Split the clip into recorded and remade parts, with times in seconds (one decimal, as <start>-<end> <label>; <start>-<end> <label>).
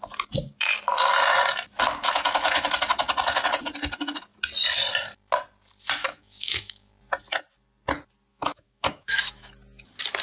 0.0-6.0 recorded; 6.0-6.9 remade; 6.9-8.3 recorded; 8.3-9.5 remade; 9.5-10.2 recorded